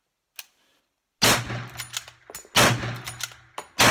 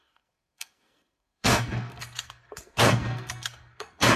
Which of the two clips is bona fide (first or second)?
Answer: first